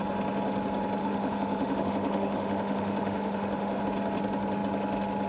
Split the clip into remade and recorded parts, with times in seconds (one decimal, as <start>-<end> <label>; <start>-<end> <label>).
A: 0.0-1.0 recorded; 1.0-3.8 remade; 3.8-5.3 recorded